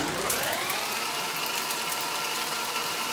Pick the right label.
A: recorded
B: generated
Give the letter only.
B